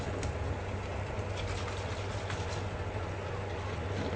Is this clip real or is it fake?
real